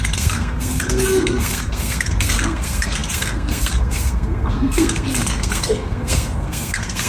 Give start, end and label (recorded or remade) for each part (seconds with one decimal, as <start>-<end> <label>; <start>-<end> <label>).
0.0-7.1 remade